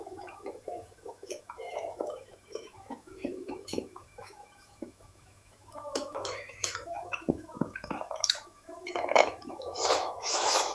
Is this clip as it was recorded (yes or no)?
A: no